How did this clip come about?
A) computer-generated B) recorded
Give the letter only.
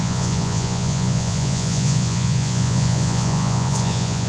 A